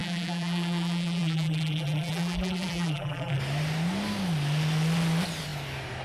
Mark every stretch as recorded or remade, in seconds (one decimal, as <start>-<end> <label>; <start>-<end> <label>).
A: 0.0-3.4 remade; 3.4-6.0 recorded